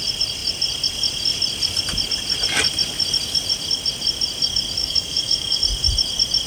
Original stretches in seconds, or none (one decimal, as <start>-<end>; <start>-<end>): 0.0-4.8; 5.6-6.5